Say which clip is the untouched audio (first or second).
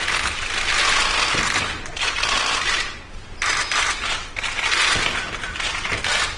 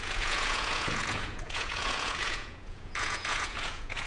first